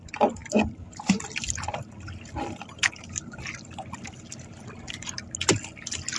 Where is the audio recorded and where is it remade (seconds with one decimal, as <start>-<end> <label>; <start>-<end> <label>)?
0.0-6.2 recorded